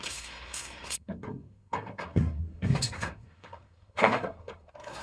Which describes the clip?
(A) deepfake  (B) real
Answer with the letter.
A